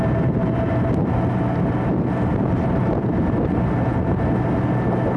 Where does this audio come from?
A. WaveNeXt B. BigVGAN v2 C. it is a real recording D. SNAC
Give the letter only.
C